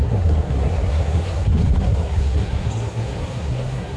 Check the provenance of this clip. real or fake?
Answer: fake